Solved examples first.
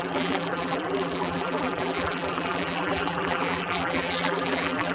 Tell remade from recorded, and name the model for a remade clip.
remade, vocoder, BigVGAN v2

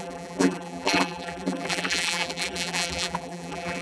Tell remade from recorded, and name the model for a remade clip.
remade, vocoder, BigVGAN v2